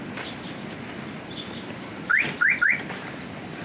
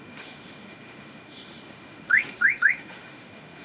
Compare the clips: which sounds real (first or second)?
first